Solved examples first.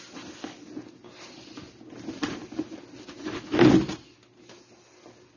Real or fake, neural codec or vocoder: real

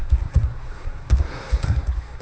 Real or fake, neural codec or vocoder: fake, codec, SNAC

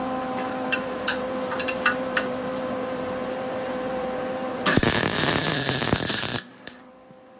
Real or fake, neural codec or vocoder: fake, vocoder, BigVGAN v2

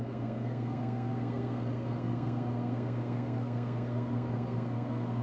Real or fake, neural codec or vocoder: fake, codec, SNAC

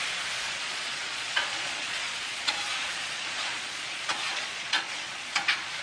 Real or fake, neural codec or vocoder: fake, vocoder, Vocos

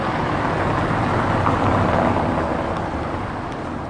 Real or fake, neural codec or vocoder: real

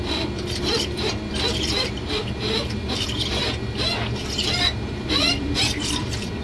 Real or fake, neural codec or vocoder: fake, vocoder, BigVGAN v2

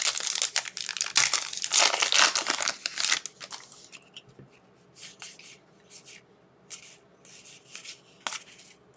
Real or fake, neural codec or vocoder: real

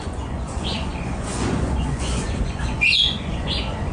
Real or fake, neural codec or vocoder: fake, vocoder, Vocos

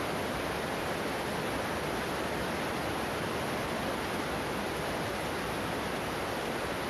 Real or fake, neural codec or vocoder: real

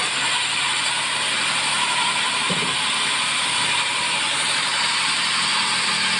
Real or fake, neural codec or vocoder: real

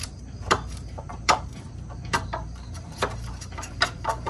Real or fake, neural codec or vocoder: fake, vocoder, BigVGAN v2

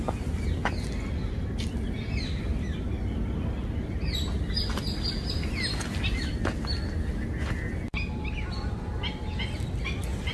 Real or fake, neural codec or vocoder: real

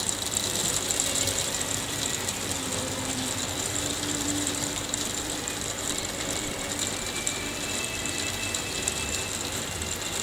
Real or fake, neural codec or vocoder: fake, vocoder, BigVGAN v2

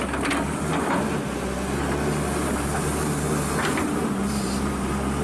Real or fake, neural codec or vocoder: real